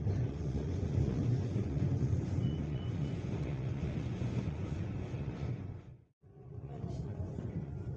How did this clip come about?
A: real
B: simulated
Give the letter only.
B